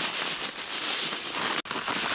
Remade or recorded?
recorded